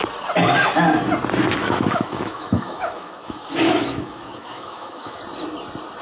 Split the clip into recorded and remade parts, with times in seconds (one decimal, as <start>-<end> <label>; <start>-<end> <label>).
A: 0.0-1.6 recorded; 1.6-5.2 remade; 5.2-6.0 recorded

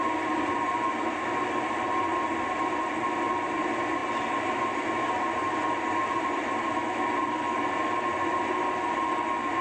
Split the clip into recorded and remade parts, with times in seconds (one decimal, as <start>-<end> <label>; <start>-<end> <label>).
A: 0.0-9.6 recorded